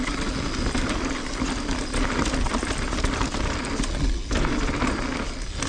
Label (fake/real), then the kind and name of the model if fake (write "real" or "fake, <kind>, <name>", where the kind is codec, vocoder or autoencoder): real